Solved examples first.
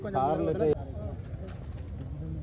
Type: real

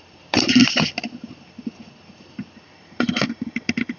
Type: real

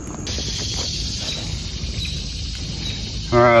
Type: real